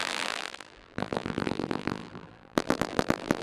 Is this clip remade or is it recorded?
remade